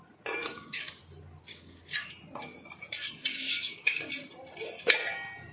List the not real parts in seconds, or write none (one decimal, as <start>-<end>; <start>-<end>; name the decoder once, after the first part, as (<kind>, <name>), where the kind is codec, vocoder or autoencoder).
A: 0.4-1.0 (codec, DAC); 1.5-2.1; 3.0-4.0